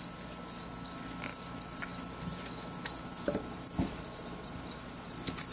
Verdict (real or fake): real